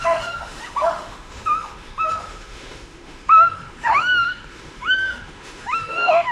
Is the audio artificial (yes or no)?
yes